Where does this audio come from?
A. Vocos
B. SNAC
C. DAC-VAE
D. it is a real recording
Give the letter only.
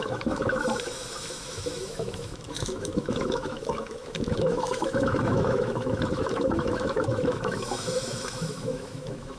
C